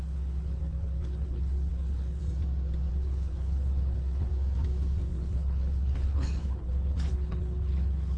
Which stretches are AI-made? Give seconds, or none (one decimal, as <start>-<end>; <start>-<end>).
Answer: 0.0-2.2; 2.9-4.3; 5.1-8.2